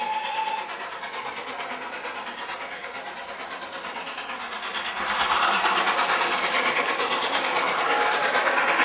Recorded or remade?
recorded